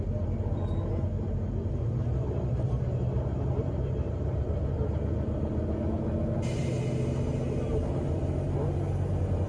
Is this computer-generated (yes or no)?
no